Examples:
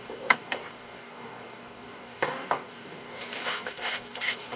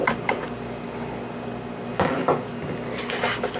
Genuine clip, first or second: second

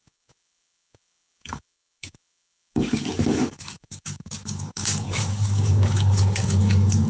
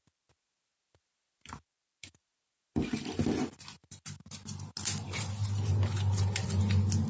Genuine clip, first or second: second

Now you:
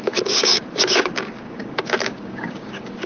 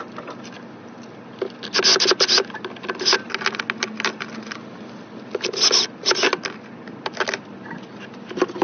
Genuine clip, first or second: second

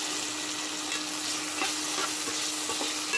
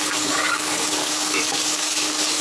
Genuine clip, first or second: first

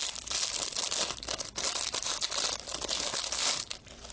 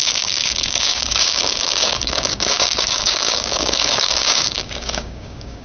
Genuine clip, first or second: first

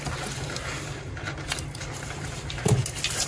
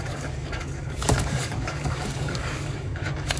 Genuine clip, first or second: first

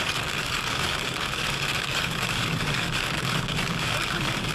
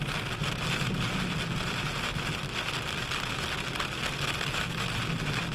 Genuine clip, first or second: second